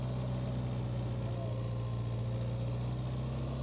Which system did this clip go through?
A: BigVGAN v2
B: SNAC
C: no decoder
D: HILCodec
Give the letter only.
C